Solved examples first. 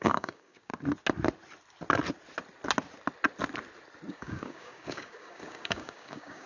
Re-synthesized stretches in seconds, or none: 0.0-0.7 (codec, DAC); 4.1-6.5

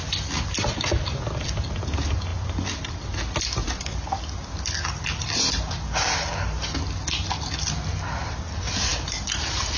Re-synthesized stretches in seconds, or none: none

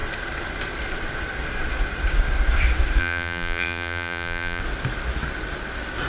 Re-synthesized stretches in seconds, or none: 3.0-4.6 (vocoder, BigVGAN v2)